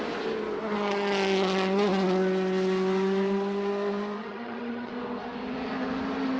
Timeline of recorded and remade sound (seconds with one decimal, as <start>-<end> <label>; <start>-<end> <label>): 0.0-4.2 recorded; 4.2-4.9 remade; 4.9-6.4 recorded